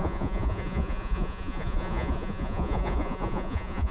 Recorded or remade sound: remade